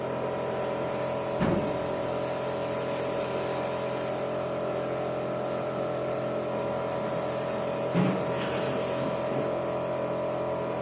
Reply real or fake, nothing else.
real